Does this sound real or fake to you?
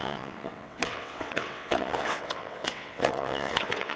fake